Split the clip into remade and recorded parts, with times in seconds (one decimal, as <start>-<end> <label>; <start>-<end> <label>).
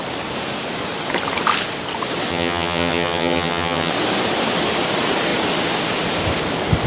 0.0-2.3 recorded; 2.3-3.9 remade; 3.9-6.9 recorded